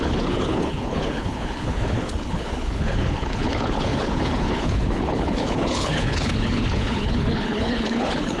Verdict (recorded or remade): remade